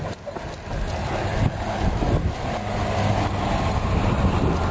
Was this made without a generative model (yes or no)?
yes